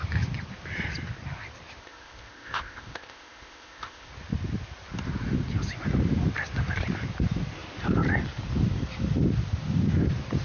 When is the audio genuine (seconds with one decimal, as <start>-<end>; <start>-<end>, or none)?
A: 0.0-1.8; 4.1-10.4